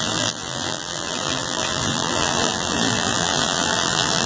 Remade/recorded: remade